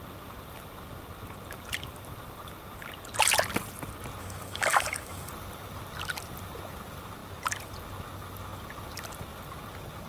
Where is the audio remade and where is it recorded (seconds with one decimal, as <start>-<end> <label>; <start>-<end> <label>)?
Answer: 0.0-4.2 recorded; 4.2-5.3 remade; 5.3-10.1 recorded